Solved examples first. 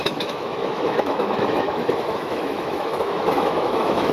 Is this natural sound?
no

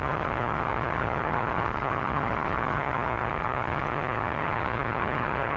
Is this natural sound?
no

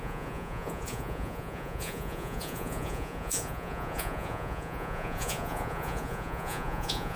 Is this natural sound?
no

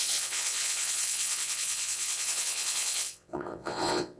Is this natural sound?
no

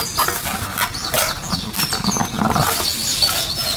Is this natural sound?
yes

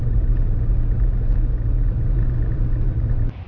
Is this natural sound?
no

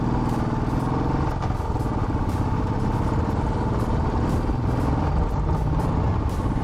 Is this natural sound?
yes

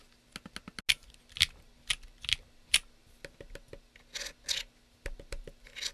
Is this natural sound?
yes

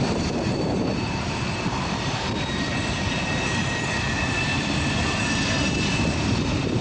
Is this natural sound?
no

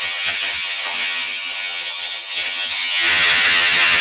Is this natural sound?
no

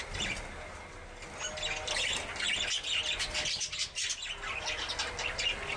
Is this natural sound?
yes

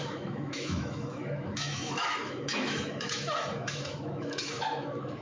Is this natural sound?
no